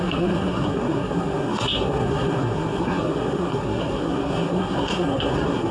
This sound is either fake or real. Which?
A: fake